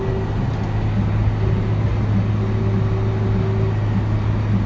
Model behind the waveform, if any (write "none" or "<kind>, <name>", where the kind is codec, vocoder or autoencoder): none